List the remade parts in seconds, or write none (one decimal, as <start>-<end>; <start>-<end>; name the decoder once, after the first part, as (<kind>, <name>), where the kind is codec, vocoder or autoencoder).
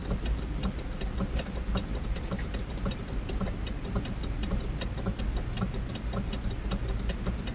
1.8-2.6 (vocoder, BigVGAN v2)